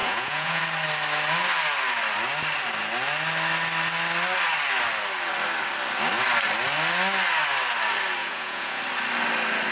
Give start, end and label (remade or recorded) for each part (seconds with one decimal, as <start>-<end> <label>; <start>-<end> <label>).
0.0-0.6 remade; 0.6-8.2 recorded; 8.2-8.8 remade; 8.8-9.7 recorded